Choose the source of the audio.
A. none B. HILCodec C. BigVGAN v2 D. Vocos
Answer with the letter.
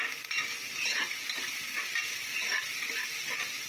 A